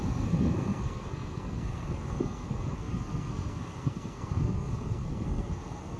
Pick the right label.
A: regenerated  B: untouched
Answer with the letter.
A